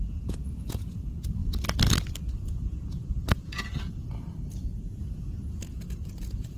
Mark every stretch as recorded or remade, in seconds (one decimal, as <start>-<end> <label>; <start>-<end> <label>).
0.0-1.4 remade; 1.4-2.3 recorded; 2.3-6.6 remade